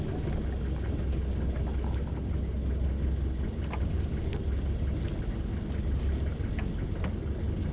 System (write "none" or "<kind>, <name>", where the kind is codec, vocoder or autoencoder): none